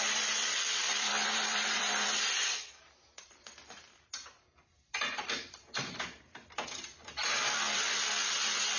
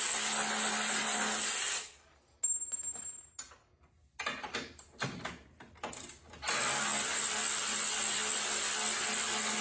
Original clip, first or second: second